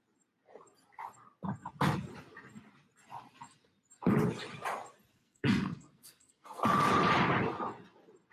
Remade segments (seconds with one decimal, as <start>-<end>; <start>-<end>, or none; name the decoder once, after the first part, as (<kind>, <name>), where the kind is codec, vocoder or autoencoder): 5.1-6.6 (codec, SNAC)